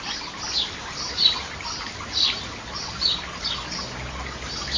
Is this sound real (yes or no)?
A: yes